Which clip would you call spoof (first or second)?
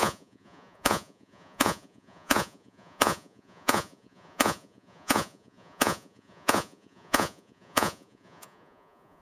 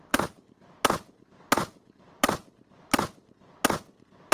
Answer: first